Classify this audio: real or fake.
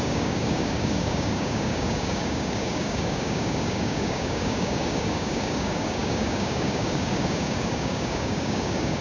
fake